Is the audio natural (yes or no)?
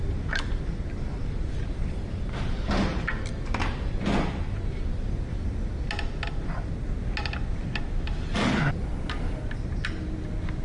yes